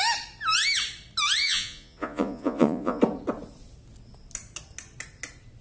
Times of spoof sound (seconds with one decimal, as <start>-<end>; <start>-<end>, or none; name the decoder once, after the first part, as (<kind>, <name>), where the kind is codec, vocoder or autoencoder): 1.4-3.0 (vocoder, Vocos)